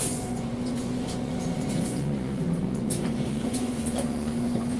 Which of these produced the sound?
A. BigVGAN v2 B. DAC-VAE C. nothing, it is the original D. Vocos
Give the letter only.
D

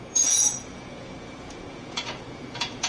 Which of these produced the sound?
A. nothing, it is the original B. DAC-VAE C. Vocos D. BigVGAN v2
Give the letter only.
C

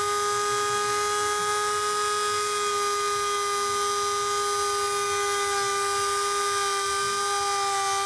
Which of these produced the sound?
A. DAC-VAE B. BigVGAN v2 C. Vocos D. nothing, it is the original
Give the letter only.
D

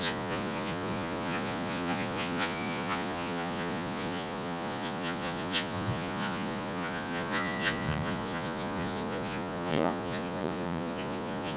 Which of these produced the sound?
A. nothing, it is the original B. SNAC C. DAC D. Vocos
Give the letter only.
D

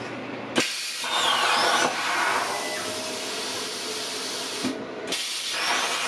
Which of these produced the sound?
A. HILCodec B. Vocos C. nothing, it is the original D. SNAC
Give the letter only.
C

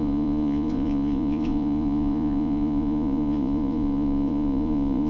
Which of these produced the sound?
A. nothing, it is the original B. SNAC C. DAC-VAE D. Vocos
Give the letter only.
D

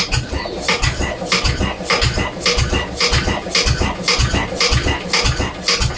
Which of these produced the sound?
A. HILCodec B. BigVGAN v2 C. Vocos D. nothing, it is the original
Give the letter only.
D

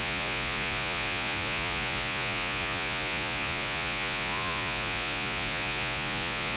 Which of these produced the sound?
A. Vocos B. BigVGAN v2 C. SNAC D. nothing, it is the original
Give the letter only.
A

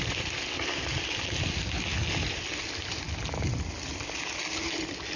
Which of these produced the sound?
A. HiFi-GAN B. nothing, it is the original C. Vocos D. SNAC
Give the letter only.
B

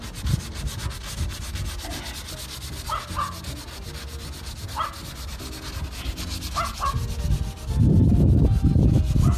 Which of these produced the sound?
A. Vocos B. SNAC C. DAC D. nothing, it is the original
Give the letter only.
D